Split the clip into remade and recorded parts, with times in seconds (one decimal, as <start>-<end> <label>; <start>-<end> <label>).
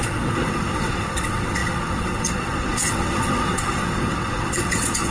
0.0-5.1 remade